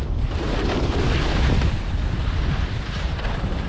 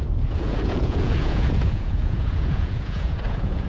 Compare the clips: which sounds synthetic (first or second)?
second